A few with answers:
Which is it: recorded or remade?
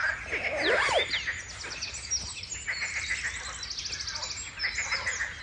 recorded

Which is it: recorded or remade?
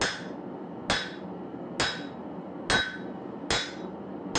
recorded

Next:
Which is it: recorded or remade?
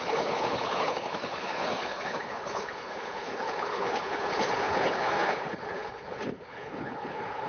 remade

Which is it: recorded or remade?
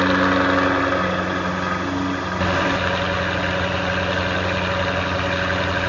recorded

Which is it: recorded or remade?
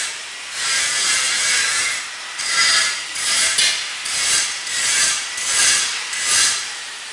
remade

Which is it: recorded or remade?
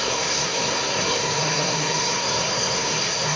remade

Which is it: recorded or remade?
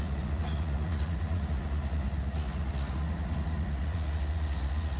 remade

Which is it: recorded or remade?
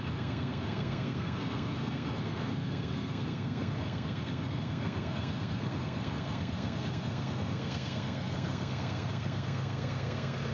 remade